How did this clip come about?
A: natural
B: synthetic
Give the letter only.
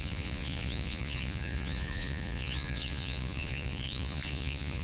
B